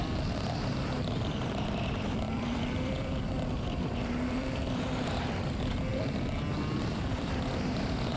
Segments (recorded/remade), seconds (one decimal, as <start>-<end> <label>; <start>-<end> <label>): 0.0-5.9 remade; 5.9-6.8 recorded; 6.8-8.2 remade